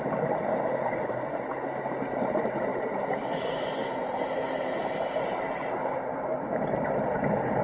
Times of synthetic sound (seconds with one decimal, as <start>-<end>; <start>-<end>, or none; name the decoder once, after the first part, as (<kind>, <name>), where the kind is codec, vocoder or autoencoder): none